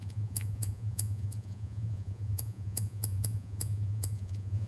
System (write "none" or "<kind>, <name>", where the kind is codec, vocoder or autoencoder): vocoder, Vocos